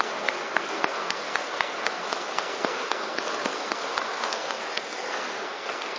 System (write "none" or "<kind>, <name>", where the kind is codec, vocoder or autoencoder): codec, SNAC